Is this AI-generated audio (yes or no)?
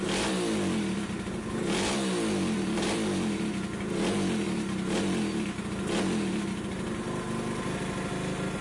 no